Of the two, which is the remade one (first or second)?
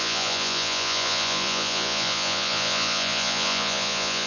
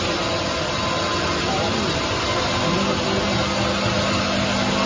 first